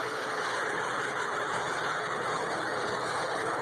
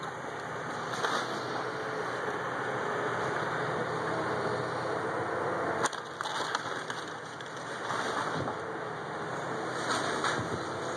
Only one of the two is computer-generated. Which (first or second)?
first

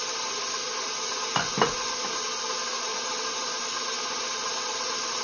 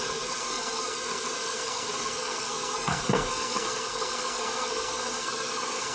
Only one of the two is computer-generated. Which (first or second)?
second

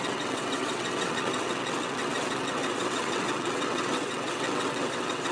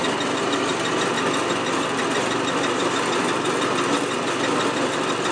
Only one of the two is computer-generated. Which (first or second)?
first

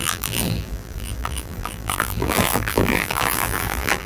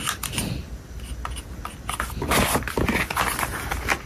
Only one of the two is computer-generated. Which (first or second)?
first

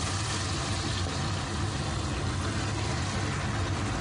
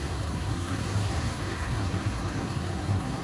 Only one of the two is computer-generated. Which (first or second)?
second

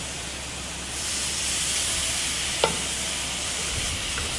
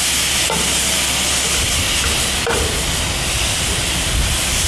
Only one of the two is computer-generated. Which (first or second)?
first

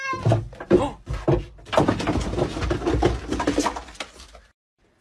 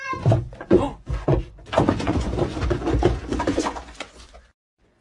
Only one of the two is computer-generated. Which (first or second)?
second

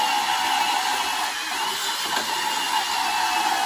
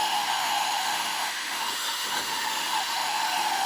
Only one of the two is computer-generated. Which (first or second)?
second